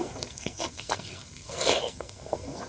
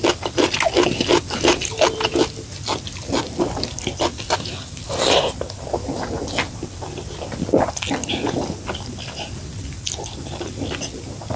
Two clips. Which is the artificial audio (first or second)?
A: first